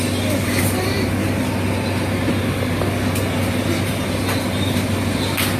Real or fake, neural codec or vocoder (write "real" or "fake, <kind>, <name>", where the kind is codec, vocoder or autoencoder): real